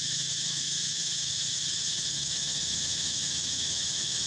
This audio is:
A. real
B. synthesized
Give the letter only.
B